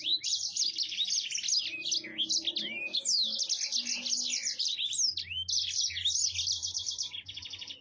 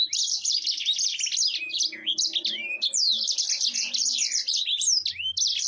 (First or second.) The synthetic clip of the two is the second